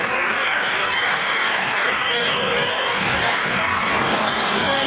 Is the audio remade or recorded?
remade